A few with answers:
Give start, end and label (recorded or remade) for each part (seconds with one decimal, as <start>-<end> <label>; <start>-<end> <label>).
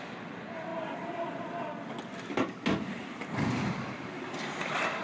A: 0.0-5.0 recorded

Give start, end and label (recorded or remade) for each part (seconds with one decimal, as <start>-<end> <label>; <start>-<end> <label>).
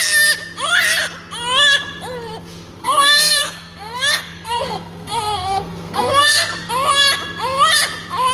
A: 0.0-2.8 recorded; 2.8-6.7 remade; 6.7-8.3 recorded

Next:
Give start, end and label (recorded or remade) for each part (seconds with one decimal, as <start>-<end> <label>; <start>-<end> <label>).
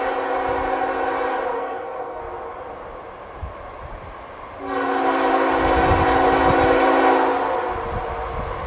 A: 0.0-1.5 recorded; 1.5-2.2 remade; 2.2-8.7 recorded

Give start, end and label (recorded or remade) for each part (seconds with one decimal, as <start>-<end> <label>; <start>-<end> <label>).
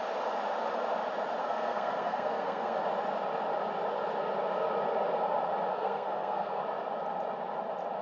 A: 0.0-1.4 recorded; 1.4-2.8 remade; 2.8-5.7 recorded; 5.7-6.6 remade; 6.6-8.0 recorded